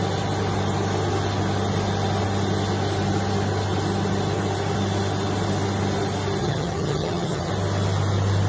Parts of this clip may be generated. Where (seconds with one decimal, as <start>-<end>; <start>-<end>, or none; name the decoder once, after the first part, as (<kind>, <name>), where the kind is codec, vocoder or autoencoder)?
6.4-7.5 (vocoder, HiFi-GAN)